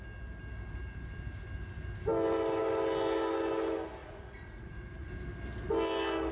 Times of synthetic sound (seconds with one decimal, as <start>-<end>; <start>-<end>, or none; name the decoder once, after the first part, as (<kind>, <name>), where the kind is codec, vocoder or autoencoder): 4.0-5.1 (vocoder, Vocos)